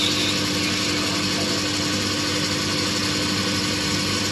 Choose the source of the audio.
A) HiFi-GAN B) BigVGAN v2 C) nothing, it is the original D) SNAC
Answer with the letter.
C